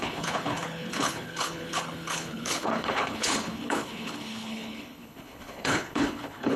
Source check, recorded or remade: remade